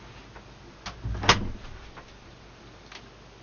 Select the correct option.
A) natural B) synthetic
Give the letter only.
A